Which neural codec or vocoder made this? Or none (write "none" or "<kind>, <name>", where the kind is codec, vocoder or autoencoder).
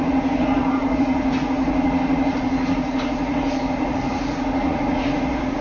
vocoder, Vocos